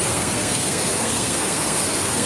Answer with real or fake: fake